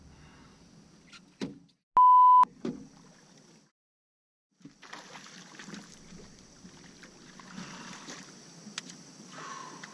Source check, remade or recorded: recorded